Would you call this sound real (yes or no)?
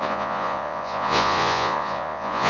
no